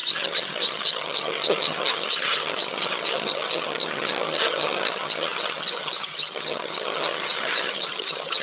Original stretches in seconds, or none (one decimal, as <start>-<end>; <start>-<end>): none